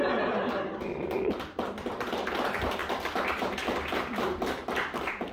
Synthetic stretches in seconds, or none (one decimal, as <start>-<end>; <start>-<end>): none

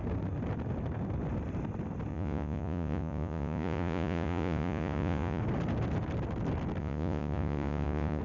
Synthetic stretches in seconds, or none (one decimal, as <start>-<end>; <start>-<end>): 2.1-5.4; 6.8-8.2

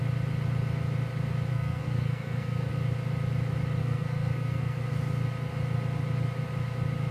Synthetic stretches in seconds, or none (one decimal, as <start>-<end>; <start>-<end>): 1.5-2.7; 3.8-4.9

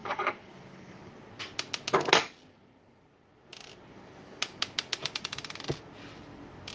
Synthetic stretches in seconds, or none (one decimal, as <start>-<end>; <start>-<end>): 0.0-1.1